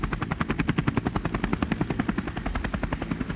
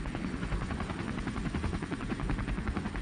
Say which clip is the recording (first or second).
first